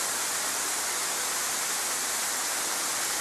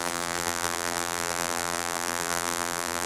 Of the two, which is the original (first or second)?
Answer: first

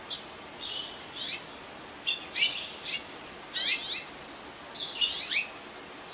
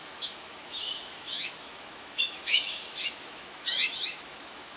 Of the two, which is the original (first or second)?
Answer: first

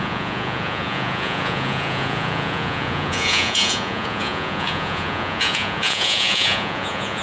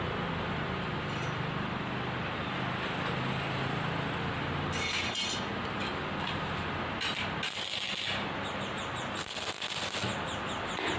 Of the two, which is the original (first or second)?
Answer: second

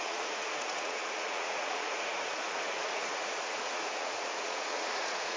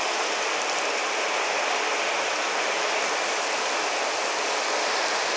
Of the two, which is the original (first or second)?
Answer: second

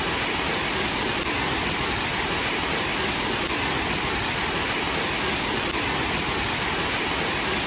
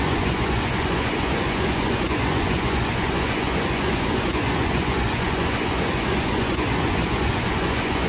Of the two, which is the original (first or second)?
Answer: first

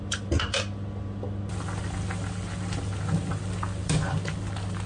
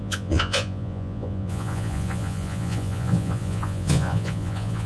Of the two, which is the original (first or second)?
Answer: first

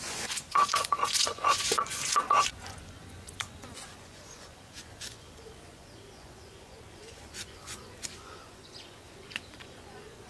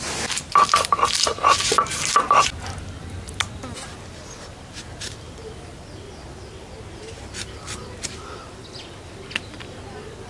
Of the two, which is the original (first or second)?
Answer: second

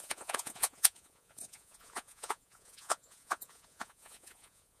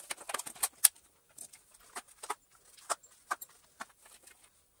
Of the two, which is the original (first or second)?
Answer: second